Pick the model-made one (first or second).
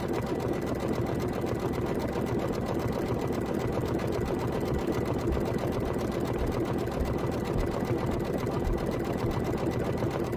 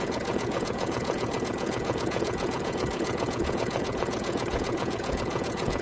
second